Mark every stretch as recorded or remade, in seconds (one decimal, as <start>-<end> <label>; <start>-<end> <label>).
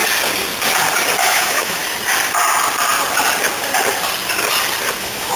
0.0-1.2 recorded; 1.2-1.8 remade; 1.8-5.0 recorded; 5.0-5.4 remade